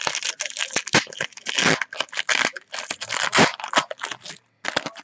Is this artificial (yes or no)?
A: no